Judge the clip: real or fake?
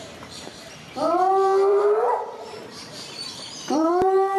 fake